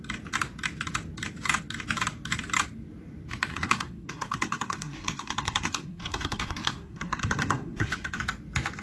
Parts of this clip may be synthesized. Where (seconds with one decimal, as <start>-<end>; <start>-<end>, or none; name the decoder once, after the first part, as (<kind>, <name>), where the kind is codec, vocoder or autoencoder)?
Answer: 3.5-8.2 (codec, SNAC)